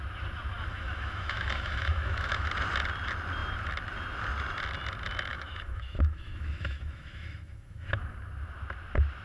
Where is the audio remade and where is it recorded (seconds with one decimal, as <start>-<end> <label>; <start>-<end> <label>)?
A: 0.0-0.7 recorded; 0.7-2.5 remade; 2.5-5.3 recorded; 5.3-8.0 remade; 8.0-9.2 recorded